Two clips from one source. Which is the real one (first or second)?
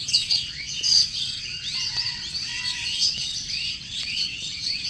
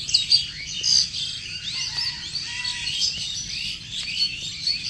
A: second